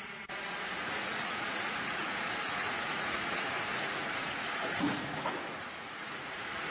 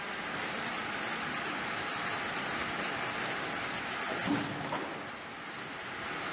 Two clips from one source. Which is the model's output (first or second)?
first